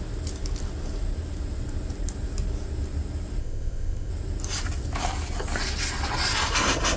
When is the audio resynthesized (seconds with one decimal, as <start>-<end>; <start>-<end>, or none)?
3.4-4.1